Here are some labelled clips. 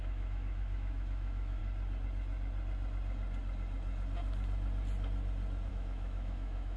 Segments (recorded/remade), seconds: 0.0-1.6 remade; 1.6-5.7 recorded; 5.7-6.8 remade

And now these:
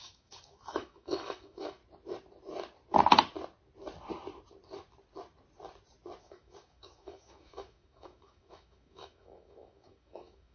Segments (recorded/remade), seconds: 0.0-1.8 remade; 1.8-6.2 recorded; 6.2-10.5 remade

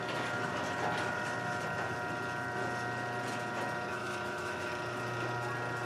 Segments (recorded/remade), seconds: 0.0-3.9 recorded; 3.9-4.7 remade; 4.7-5.9 recorded

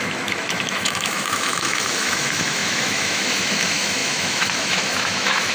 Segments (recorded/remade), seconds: 0.0-5.5 remade

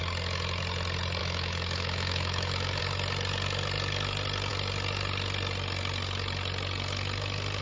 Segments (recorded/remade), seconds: 0.0-1.2 recorded; 1.2-2.8 remade; 2.8-7.6 recorded

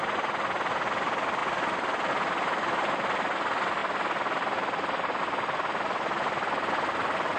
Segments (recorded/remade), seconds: 0.0-7.4 recorded

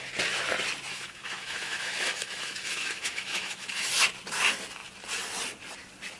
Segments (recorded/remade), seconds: 0.0-0.9 recorded; 0.9-3.9 remade; 3.9-6.2 recorded

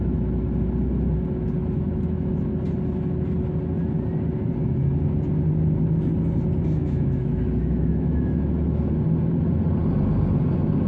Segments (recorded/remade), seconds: 0.0-1.6 recorded; 1.6-2.3 remade; 2.3-6.8 recorded; 6.8-9.0 remade; 9.0-10.9 recorded